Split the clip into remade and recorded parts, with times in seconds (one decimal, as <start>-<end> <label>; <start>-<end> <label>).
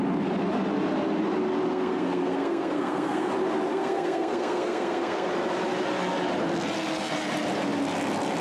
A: 0.0-1.7 recorded; 1.7-3.3 remade; 3.3-3.7 recorded; 3.7-5.3 remade; 5.3-8.4 recorded